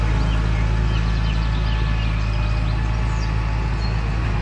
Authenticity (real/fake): real